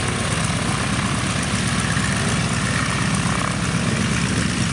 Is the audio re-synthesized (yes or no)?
no